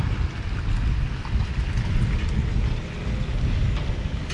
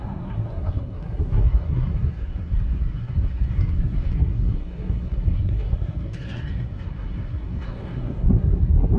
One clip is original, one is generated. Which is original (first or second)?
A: first